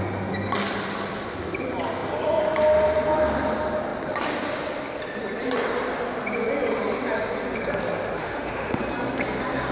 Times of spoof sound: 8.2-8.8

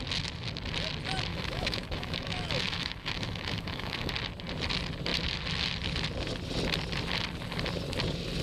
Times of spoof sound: 1.3-4.1

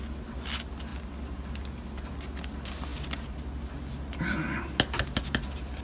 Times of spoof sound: none

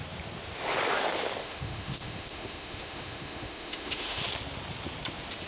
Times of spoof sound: 1.4-4.2

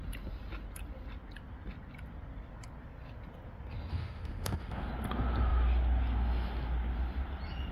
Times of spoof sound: 3.9-4.9